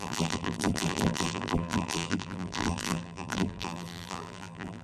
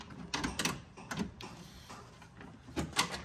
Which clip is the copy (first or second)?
first